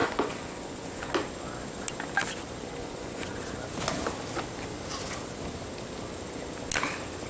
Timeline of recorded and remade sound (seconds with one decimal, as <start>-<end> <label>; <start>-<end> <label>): 0.0-1.1 remade; 1.1-2.8 recorded; 2.8-3.4 remade; 3.4-7.3 recorded